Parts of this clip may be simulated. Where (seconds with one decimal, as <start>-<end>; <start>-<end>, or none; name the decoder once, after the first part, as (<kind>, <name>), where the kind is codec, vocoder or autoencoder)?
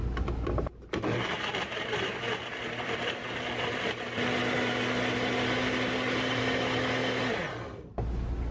none